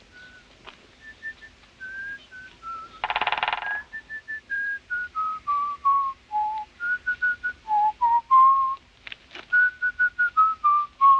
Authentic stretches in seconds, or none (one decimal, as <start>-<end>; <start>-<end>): 0.0-4.3; 6.7-11.2